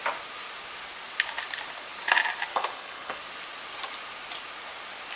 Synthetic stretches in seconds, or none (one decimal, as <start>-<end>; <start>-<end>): 2.5-3.2

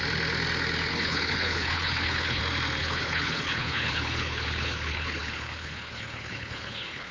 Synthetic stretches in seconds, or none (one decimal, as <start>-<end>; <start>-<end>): 0.9-2.4; 2.8-7.1